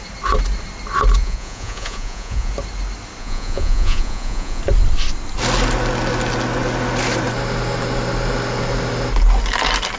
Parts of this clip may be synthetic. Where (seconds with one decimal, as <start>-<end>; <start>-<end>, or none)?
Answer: 1.2-2.5; 3.2-4.6